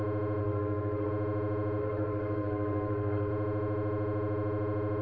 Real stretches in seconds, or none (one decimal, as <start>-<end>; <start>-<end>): 0.0-0.4; 1.1-1.8; 3.3-5.0